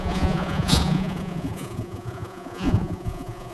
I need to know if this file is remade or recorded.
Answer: remade